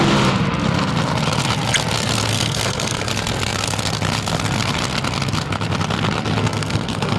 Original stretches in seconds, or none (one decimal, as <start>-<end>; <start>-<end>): 0.0-2.3; 3.0-6.4